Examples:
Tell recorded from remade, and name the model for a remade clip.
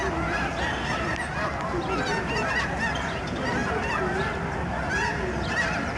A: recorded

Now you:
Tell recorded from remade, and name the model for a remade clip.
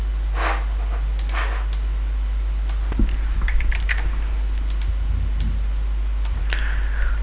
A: recorded